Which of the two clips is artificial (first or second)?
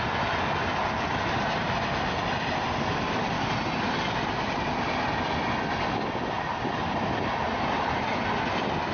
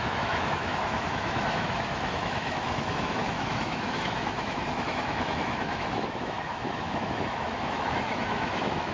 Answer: second